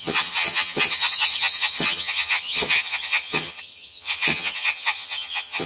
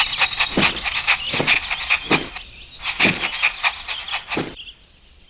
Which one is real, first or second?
second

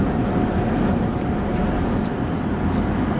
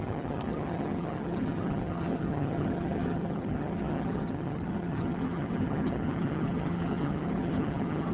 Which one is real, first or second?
first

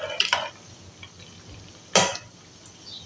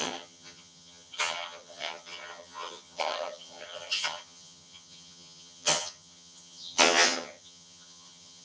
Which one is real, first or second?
first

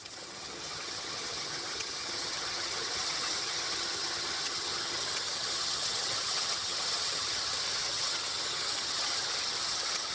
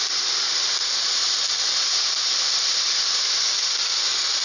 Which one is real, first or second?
second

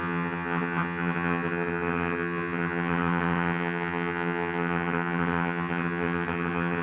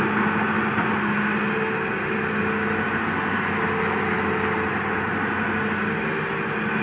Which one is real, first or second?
second